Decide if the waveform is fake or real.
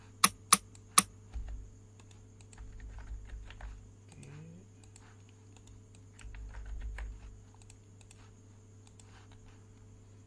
real